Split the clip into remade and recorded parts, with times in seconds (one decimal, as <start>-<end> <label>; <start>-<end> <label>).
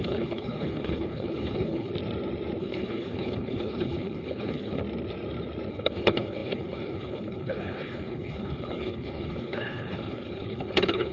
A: 0.0-1.9 remade; 1.9-2.6 recorded; 2.6-4.8 remade; 4.8-5.7 recorded; 5.7-11.1 remade